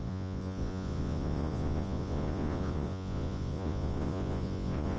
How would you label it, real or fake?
fake